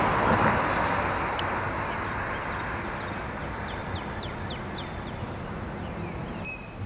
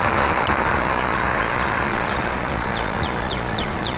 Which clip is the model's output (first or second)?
second